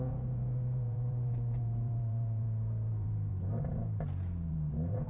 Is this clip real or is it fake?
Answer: fake